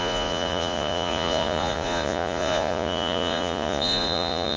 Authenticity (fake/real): fake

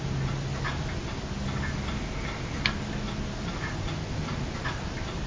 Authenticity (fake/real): real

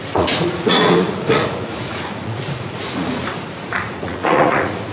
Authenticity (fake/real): fake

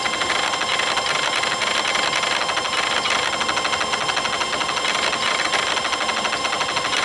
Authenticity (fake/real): real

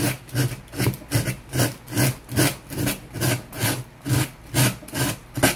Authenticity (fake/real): real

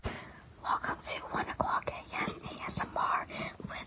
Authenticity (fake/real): real